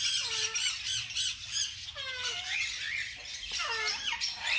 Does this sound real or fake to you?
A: real